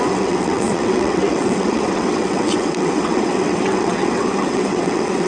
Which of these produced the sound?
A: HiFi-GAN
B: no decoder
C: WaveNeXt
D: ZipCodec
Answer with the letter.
C